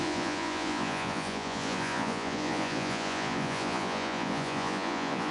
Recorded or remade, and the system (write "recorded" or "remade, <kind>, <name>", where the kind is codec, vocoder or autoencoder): remade, vocoder, Vocos